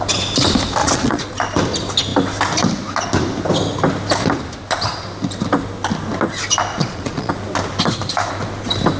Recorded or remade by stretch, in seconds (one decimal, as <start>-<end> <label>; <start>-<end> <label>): 0.0-0.8 recorded; 0.8-1.3 remade; 1.3-6.7 recorded; 6.7-7.3 remade; 7.3-9.0 recorded